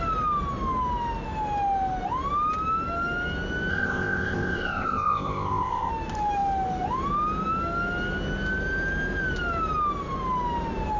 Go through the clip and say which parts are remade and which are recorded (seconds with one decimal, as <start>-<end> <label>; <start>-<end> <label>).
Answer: 0.0-3.7 recorded; 3.7-5.9 remade; 5.9-11.0 recorded